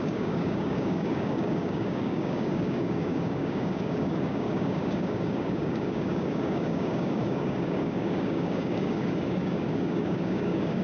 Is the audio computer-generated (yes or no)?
yes